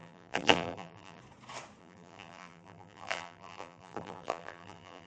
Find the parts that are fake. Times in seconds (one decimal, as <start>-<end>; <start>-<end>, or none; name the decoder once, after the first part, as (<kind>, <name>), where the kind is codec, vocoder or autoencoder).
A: 0.0-1.2 (vocoder, BigVGAN v2); 1.8-5.1